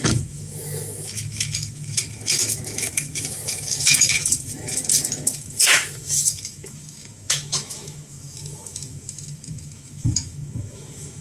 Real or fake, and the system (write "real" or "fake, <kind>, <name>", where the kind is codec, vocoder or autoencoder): fake, autoencoder, DAC-VAE